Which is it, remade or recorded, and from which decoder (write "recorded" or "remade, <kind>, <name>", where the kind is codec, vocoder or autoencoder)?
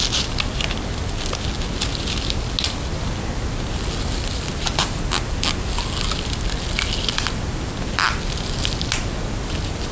recorded